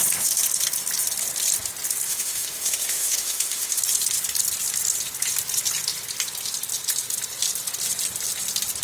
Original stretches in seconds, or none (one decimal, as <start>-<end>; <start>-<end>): 0.0-2.1; 3.8-8.8